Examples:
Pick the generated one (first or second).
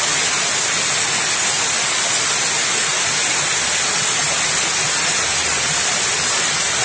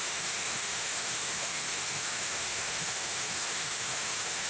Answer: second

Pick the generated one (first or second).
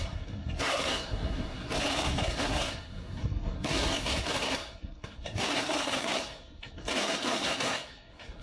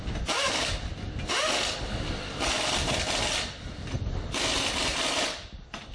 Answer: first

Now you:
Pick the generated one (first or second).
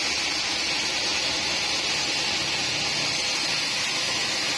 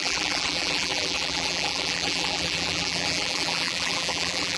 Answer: second